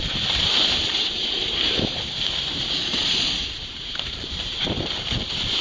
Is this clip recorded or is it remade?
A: remade